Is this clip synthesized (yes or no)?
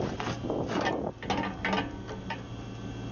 no